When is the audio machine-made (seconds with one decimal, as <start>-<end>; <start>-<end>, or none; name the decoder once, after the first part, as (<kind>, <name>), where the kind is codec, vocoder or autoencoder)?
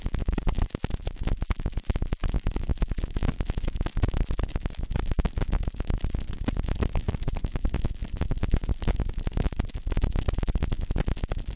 4.9-7.3 (vocoder, BigVGAN v2)